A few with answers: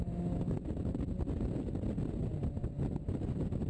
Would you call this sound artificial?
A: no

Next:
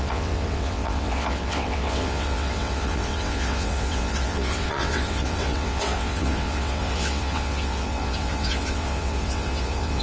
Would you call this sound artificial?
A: yes